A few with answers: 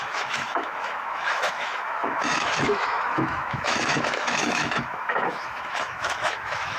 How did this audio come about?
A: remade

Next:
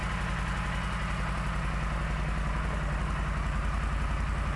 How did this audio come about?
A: recorded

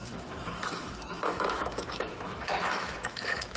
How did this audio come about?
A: remade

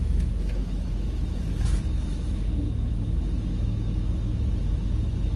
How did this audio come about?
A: remade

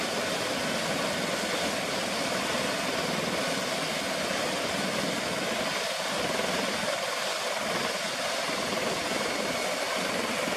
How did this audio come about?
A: recorded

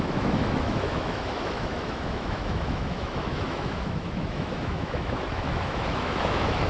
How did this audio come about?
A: remade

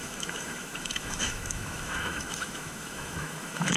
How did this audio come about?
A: remade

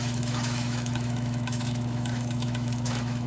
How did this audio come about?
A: remade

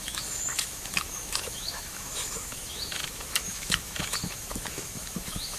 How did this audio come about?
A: remade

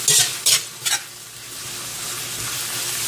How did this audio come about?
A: recorded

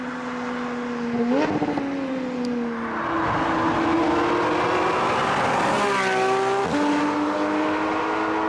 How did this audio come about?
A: recorded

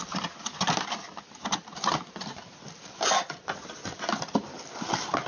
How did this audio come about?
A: recorded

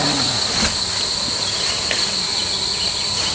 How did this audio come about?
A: recorded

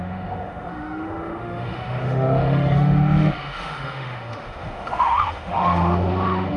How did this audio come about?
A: remade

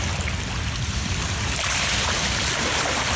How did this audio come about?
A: recorded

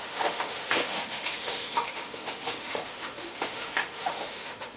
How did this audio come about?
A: remade